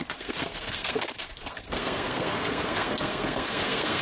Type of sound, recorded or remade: remade